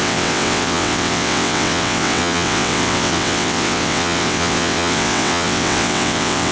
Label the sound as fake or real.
fake